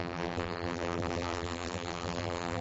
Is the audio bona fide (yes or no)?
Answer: no